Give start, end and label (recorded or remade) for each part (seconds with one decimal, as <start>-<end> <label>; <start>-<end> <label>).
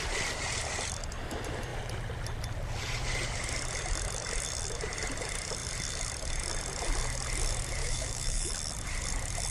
0.0-7.8 recorded; 7.8-8.5 remade; 8.5-9.5 recorded